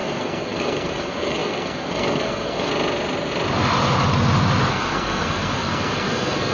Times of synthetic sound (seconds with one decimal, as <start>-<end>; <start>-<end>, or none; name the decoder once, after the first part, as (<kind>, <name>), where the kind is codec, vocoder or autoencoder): 0.0-2.7 (codec, SNAC); 4.7-6.5